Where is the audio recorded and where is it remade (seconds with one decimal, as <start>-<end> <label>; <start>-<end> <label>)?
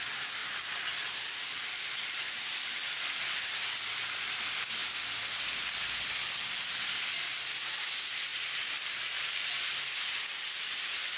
0.0-11.2 recorded